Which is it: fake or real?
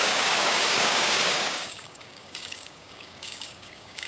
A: fake